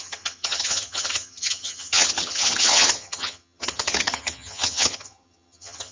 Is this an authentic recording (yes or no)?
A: no